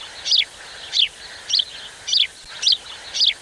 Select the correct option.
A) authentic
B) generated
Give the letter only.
A